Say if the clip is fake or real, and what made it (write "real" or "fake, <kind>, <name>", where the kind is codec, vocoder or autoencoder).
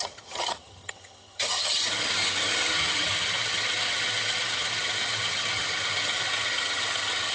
fake, vocoder, HiFi-GAN